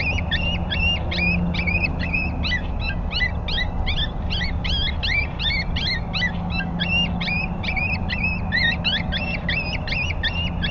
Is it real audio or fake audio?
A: real